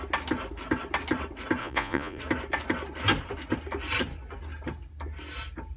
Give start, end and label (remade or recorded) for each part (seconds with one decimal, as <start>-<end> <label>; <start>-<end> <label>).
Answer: 0.0-1.6 recorded; 1.6-2.2 remade; 2.2-5.8 recorded